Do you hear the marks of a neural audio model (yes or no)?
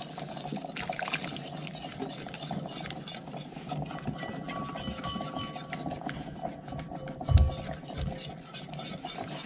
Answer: no